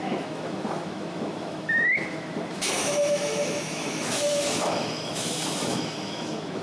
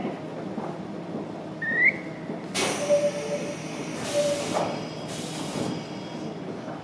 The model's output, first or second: first